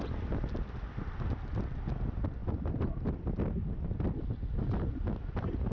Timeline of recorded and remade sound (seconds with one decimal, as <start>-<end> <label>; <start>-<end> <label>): 0.0-5.7 recorded